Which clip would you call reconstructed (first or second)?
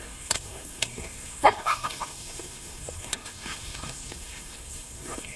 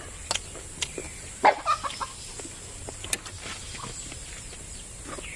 first